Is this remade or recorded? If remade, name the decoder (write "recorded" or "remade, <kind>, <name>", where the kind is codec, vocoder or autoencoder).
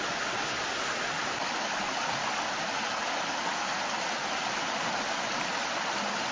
recorded